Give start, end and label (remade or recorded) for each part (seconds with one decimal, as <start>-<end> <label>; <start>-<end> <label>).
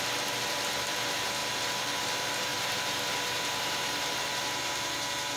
0.0-2.5 recorded; 2.5-4.2 remade; 4.2-5.4 recorded